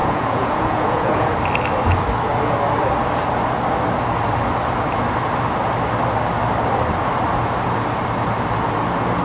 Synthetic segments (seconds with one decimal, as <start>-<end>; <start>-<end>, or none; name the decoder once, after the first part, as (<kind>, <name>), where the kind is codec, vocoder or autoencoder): 0.0-1.3 (vocoder, Vocos)